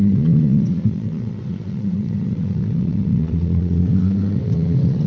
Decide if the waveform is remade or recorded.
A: remade